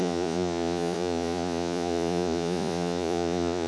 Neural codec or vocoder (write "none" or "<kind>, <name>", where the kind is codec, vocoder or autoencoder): vocoder, Vocos